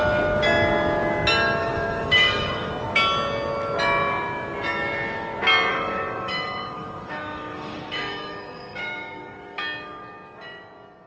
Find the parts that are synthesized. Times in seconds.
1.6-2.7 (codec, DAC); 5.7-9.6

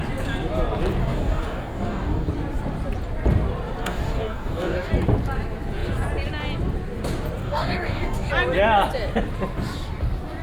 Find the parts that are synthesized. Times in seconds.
1.0-2.3 (codec, DAC); 3.8-4.9; 7.4-8.3